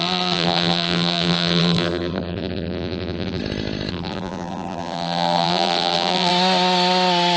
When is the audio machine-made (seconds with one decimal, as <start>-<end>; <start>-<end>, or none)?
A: 0.0-3.4; 3.9-6.3